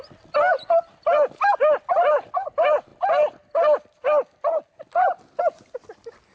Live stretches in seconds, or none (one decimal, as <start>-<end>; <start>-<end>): 0.0-6.3